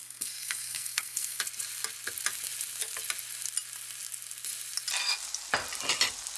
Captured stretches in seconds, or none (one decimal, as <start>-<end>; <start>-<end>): 1.4-6.4